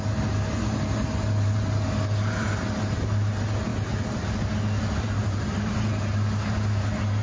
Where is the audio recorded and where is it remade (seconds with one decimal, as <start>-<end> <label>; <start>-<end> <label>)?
0.0-7.2 recorded

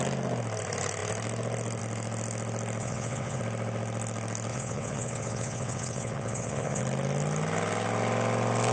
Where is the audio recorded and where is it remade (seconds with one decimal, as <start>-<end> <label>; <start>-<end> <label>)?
0.0-2.8 recorded; 2.8-3.4 remade; 3.4-4.5 recorded; 4.5-6.8 remade; 6.8-8.7 recorded

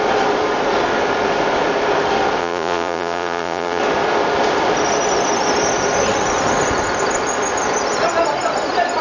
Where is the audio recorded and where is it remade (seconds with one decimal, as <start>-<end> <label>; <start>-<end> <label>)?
0.0-2.4 recorded; 2.4-3.8 remade; 3.8-9.0 recorded

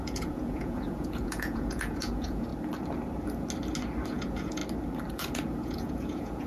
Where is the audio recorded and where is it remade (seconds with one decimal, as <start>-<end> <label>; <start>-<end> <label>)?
0.0-2.5 remade; 2.5-4.1 recorded; 4.1-4.6 remade; 4.6-5.1 recorded; 5.1-6.5 remade

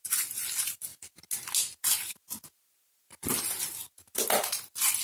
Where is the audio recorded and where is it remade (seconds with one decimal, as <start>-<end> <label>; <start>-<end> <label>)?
0.0-5.0 recorded